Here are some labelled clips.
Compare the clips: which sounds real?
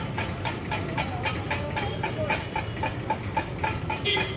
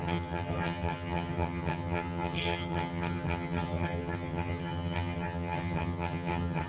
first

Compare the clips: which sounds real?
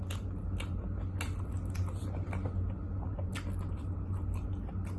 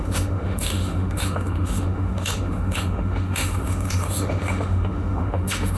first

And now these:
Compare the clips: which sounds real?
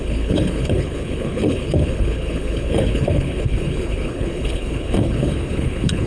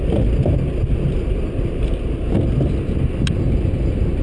second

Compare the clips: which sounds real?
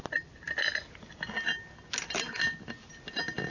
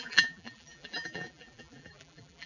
first